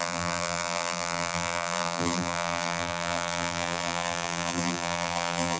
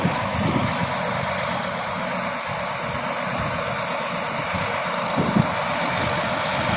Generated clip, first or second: first